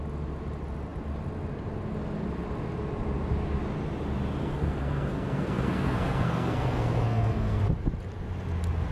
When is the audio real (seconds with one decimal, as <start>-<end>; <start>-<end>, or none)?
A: 0.0-4.4; 7.6-8.9